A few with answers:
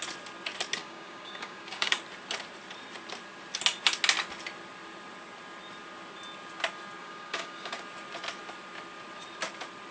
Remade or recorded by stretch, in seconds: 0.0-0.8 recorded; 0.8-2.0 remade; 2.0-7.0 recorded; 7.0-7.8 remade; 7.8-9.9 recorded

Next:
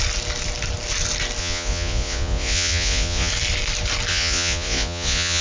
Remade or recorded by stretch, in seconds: 0.0-1.4 recorded; 1.4-3.3 remade; 3.3-4.1 recorded; 4.1-5.4 remade

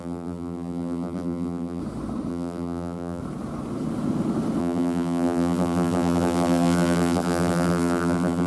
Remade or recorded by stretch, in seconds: 0.0-1.8 remade; 1.8-2.3 recorded; 2.3-3.2 remade; 3.2-4.6 recorded; 4.6-8.5 remade

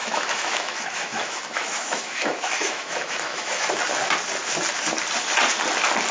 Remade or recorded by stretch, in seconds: 0.0-3.7 remade; 3.7-6.1 recorded

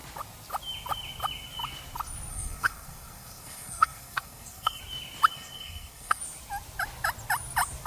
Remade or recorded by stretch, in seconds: 0.0-2.3 recorded; 2.3-4.8 remade; 4.8-5.3 recorded; 5.3-6.2 remade; 6.2-7.9 recorded

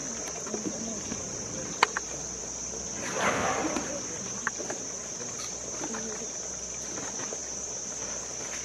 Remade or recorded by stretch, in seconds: 0.0-8.6 recorded